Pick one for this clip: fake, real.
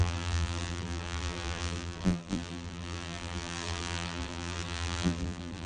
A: fake